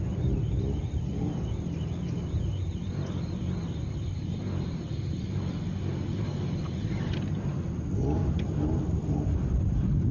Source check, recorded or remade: recorded